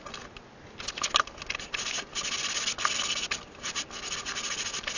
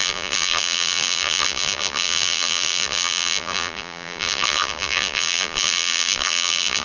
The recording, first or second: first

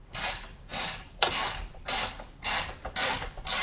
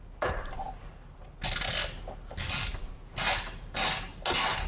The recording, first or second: second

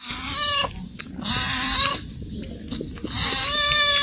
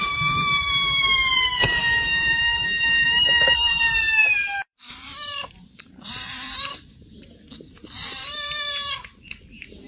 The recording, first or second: first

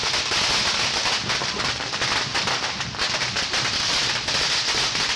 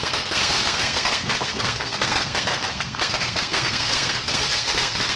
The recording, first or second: first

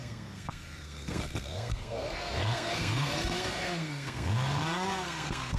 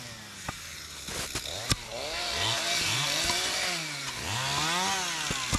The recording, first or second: second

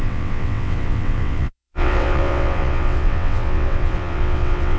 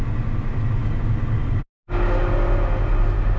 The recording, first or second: second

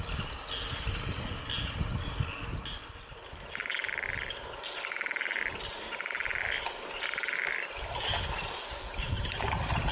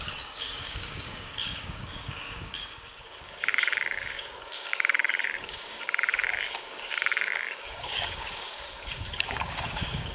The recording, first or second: first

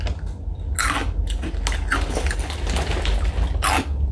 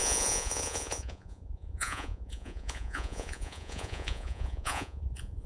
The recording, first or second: first